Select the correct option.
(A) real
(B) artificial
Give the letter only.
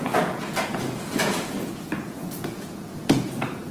B